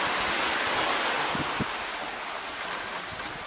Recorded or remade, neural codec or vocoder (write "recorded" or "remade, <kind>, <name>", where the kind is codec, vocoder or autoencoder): recorded